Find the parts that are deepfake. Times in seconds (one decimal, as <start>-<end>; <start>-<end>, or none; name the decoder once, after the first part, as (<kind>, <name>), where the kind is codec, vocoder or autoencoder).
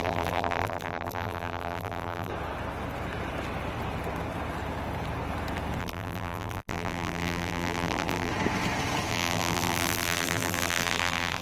0.0-2.3 (vocoder, BigVGAN v2); 5.8-8.3; 9.1-11.4